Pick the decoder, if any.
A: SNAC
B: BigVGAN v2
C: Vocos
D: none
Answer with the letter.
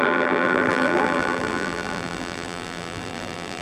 B